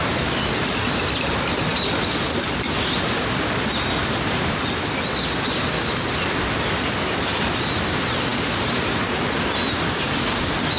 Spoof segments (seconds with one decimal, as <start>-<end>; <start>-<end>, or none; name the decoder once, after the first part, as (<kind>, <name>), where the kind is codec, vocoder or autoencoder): 1.7-2.4 (vocoder, BigVGAN v2); 4.0-4.6